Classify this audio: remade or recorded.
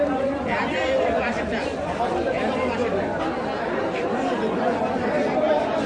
remade